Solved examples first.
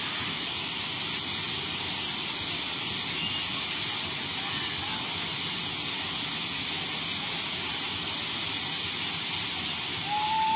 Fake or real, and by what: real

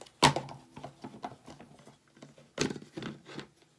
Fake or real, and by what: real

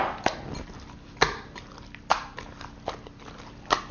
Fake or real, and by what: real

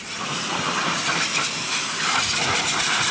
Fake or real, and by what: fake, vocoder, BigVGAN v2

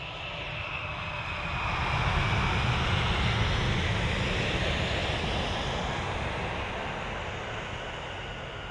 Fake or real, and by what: real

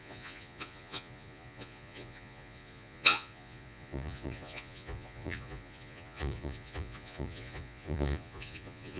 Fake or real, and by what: fake, vocoder, Vocos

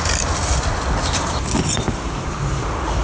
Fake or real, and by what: real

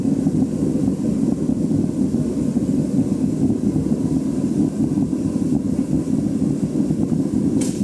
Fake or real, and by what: real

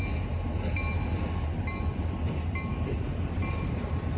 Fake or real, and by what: real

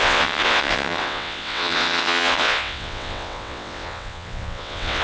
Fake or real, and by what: fake, vocoder, WaveNeXt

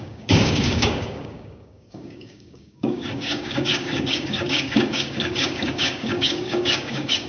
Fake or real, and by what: fake, codec, DAC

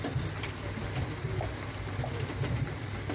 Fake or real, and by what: real